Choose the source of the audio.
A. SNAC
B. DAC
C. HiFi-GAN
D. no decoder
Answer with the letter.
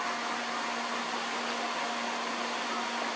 D